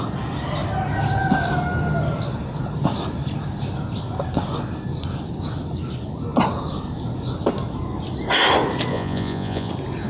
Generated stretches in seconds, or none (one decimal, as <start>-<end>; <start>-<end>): 8.9-9.7